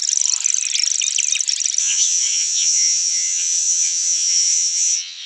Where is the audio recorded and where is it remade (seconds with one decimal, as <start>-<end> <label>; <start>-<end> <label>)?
0.0-1.8 recorded; 1.8-5.3 remade